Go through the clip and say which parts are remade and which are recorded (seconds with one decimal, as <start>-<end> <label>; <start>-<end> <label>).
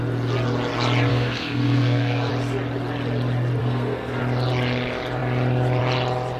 0.0-1.1 recorded; 1.1-2.3 remade; 2.3-3.6 recorded; 3.6-4.2 remade; 4.2-6.4 recorded